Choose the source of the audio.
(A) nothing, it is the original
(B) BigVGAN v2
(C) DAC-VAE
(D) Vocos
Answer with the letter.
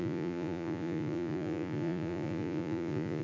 D